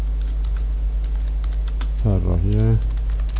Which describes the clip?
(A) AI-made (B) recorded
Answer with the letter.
B